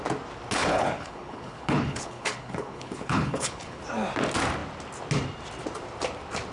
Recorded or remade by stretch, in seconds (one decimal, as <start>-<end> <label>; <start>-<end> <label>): 0.0-0.6 recorded; 0.6-3.8 remade; 3.8-6.5 recorded